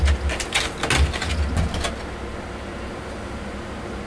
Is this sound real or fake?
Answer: real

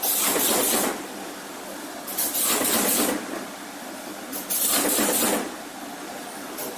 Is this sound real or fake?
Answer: real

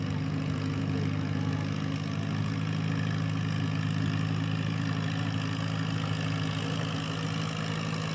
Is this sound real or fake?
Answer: real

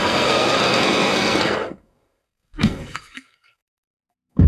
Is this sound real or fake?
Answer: fake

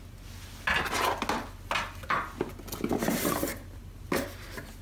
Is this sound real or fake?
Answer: real